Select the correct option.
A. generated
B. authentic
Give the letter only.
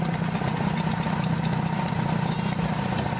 B